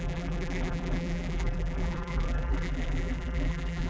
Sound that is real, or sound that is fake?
fake